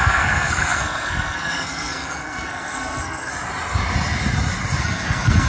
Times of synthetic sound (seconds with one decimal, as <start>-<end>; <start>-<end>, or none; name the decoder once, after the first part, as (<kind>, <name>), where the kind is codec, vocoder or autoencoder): 0.0-3.3 (codec, SNAC); 4.8-5.5